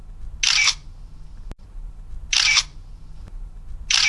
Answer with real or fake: real